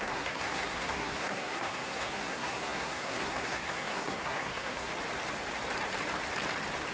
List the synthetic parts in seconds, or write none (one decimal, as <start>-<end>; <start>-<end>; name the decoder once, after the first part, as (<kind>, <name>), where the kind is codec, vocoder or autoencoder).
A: 0.0-4.9 (codec, SNAC)